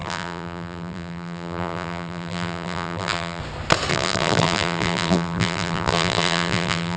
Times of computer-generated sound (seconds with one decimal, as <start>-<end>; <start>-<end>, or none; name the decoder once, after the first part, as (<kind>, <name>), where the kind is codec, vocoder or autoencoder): 0.0-3.4 (vocoder, BigVGAN v2); 3.9-7.0